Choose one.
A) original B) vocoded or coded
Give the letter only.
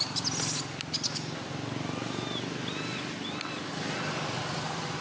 A